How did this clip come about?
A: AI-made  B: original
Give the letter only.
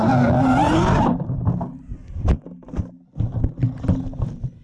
B